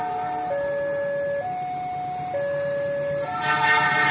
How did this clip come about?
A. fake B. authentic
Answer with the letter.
B